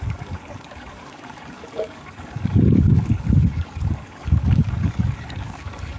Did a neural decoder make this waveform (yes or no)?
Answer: yes